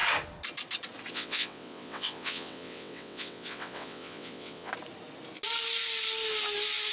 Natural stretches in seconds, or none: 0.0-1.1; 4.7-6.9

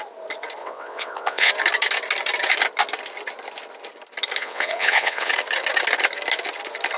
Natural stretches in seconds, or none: 0.0-0.6; 1.5-4.4; 5.3-7.0

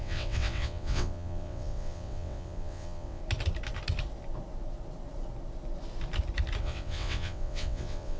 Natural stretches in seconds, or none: 3.2-6.6

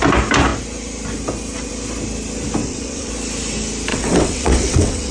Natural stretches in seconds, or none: 0.0-2.6; 3.1-3.9

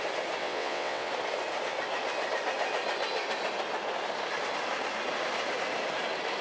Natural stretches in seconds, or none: 0.0-0.4; 1.1-6.4

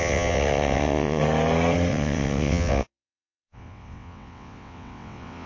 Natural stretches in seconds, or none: 1.2-1.9

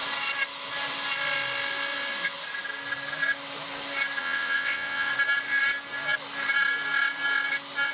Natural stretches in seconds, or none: 0.0-4.2; 5.1-7.9